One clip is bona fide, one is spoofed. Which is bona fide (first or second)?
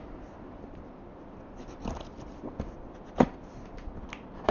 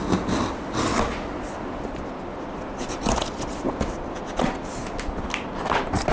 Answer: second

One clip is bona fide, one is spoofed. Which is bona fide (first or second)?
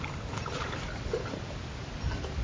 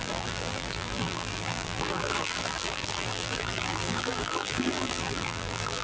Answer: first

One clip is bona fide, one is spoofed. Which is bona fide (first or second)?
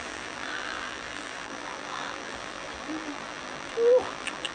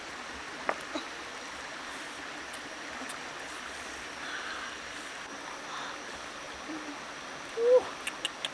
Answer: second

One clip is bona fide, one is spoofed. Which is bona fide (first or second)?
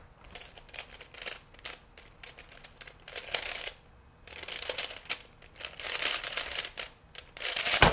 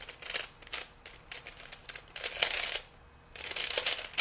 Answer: second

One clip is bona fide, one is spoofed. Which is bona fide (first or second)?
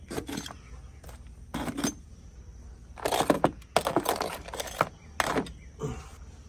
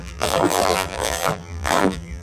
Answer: first